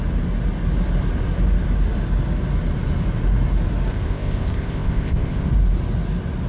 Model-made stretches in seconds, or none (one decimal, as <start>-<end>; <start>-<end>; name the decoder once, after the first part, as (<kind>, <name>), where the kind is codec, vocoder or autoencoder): 3.9-5.5 (codec, ZipCodec)